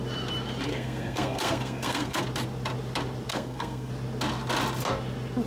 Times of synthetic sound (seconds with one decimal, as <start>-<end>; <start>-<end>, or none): 0.7-2.2; 3.3-3.9